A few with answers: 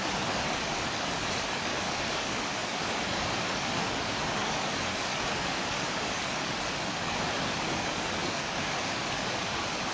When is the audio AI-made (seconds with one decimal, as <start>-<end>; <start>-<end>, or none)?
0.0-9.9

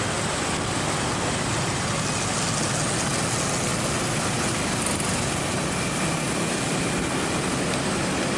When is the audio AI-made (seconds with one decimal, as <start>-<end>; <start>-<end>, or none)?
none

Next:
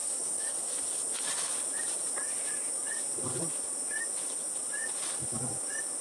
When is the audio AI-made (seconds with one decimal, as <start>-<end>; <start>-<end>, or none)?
0.0-0.7